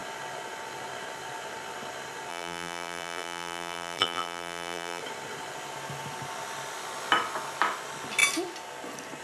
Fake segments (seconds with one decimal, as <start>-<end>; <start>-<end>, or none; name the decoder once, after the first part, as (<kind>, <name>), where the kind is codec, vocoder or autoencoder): 2.3-5.0 (vocoder, BigVGAN v2)